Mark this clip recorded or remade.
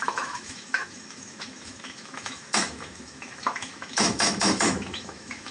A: remade